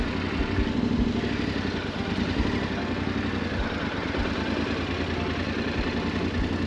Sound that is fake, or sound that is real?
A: real